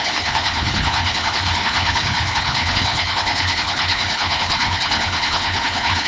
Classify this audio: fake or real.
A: fake